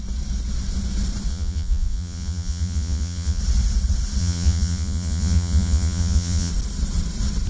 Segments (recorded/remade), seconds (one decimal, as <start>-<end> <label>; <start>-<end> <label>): 0.0-1.3 recorded; 1.3-3.4 remade; 3.4-4.2 recorded; 4.2-6.5 remade; 6.5-7.5 recorded